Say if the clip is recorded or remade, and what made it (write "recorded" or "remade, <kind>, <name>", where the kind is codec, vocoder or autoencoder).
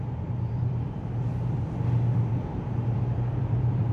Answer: remade, vocoder, BigVGAN v2